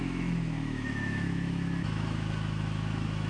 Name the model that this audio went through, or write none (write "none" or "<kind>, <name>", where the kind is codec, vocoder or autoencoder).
autoencoder, DAC-VAE